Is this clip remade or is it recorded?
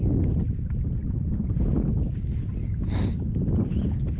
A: recorded